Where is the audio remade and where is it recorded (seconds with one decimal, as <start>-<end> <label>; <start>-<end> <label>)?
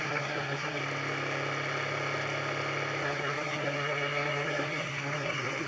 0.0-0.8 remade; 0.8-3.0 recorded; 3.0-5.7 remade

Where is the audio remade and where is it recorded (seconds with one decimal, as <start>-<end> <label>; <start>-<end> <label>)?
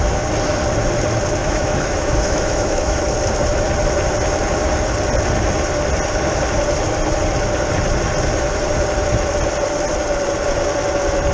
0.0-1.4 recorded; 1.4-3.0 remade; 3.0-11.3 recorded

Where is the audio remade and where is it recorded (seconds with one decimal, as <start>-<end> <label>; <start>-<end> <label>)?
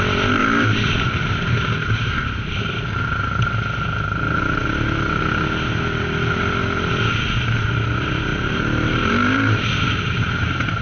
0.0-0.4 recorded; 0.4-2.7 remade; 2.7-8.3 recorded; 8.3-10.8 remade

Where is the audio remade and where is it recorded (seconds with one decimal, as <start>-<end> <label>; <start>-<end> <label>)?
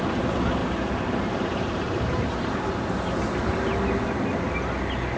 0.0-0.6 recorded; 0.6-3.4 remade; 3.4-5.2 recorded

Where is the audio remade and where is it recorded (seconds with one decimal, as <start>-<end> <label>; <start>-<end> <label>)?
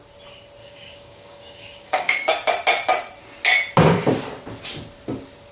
0.0-0.6 recorded; 0.6-2.3 remade; 2.3-5.5 recorded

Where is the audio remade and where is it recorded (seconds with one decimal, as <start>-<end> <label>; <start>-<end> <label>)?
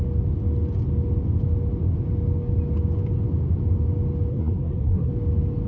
0.0-4.3 recorded; 4.3-5.1 remade; 5.1-5.7 recorded